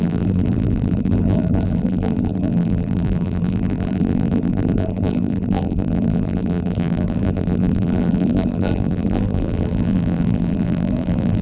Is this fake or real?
fake